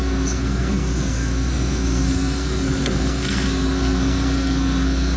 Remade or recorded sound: remade